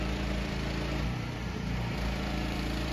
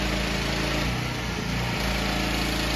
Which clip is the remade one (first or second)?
first